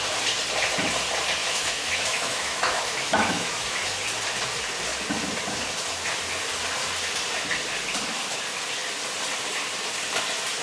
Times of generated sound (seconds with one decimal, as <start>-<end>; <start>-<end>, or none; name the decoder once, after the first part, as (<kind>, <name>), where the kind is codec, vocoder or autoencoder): 1.4-3.8 (autoencoder, DAC-VAE)

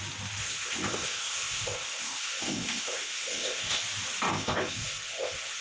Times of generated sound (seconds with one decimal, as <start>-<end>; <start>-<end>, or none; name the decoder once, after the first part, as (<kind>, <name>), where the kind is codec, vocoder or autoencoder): 0.4-3.8 (codec, ZipCodec); 4.3-5.6

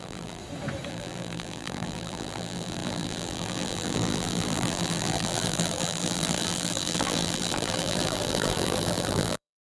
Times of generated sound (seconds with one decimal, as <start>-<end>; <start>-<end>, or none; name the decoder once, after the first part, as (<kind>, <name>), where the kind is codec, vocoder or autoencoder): 0.0-0.4 (vocoder, BigVGAN v2); 0.9-9.6